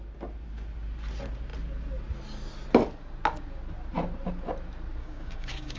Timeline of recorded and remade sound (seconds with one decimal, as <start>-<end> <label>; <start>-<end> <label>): 0.0-5.0 recorded; 5.0-5.8 remade